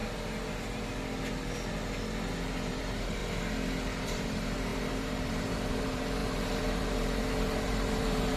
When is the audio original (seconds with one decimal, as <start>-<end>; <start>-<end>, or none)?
0.0-2.5; 3.2-4.0